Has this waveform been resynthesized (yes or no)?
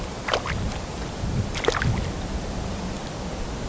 no